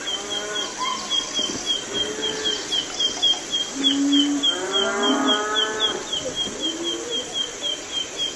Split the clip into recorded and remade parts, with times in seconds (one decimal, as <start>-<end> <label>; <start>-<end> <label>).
0.0-8.4 recorded